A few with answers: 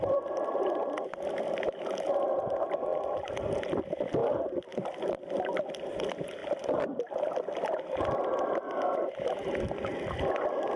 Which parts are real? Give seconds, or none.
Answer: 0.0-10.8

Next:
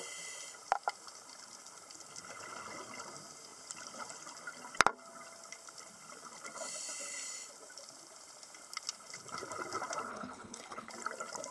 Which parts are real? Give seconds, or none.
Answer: 0.0-10.1; 10.9-11.5

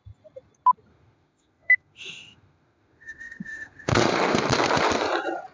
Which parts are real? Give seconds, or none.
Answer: 0.0-0.9; 4.2-5.5

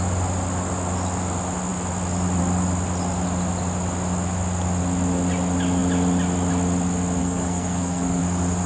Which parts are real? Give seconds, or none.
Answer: 0.0-7.2; 8.2-8.7

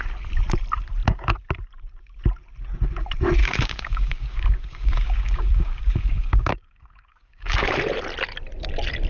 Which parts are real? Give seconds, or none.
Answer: 0.0-3.4; 7.7-9.1

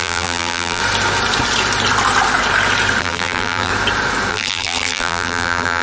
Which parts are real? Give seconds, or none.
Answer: 0.8-3.0; 3.7-4.3

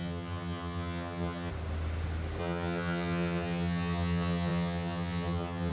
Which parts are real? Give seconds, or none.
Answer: 1.5-2.4